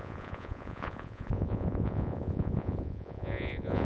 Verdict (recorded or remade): remade